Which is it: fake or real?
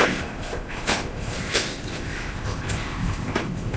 fake